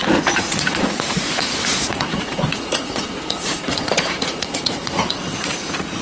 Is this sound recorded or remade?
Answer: remade